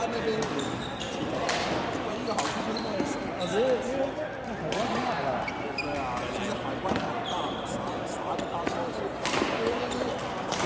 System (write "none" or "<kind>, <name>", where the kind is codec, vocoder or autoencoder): none